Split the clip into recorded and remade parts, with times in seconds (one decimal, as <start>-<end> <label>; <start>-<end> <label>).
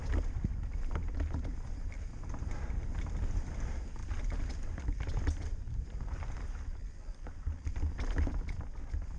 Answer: 0.0-9.2 recorded